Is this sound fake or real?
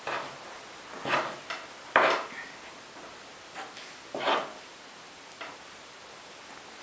real